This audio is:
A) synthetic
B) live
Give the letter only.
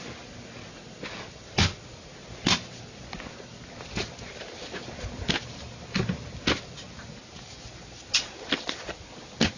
B